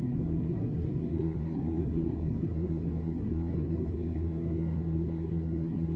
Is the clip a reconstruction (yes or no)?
yes